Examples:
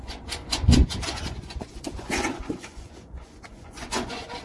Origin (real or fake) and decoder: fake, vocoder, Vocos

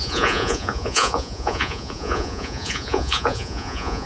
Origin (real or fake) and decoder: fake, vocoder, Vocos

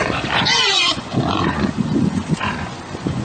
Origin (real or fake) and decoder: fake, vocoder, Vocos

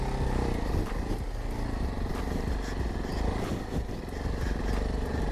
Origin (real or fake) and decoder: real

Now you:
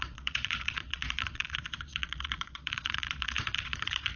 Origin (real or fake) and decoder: fake, vocoder, Vocos